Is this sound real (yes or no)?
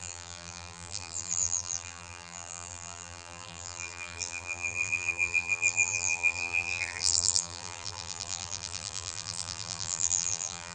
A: no